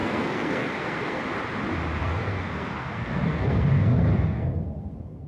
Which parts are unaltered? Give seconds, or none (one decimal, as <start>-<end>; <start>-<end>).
1.2-2.0